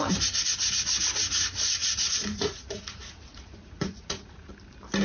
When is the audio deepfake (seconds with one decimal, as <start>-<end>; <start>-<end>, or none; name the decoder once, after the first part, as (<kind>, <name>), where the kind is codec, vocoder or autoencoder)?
1.8-4.5 (vocoder, Vocos)